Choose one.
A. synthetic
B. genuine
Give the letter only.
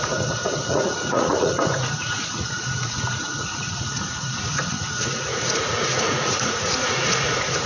A